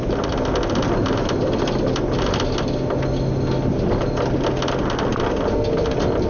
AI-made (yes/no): no